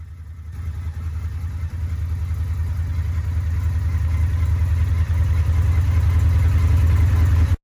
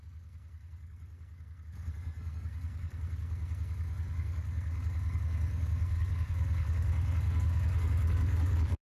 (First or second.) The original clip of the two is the first